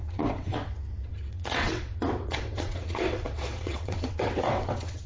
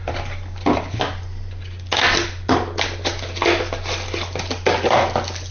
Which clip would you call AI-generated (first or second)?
first